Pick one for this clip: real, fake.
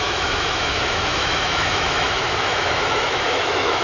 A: fake